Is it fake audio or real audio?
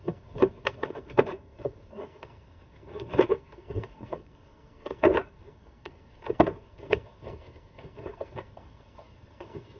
fake